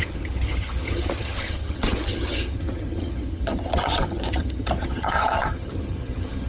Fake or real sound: fake